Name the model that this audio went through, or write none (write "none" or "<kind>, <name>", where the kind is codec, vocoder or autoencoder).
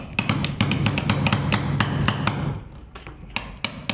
none